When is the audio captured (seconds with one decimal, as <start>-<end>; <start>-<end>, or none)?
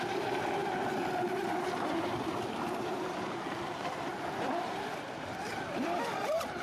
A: none